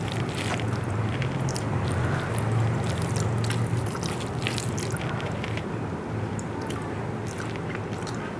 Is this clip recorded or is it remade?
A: remade